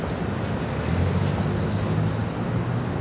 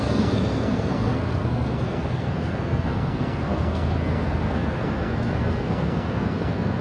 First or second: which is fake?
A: second